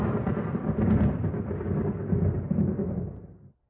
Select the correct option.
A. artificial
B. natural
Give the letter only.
B